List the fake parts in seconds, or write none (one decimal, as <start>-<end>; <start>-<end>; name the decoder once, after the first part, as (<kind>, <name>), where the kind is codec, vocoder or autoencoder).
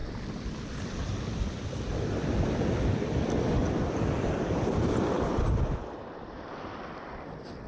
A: none